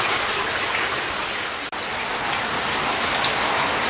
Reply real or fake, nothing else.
real